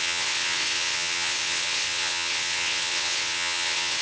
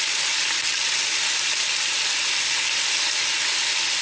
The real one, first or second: second